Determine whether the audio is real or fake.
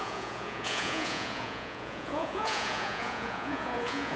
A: fake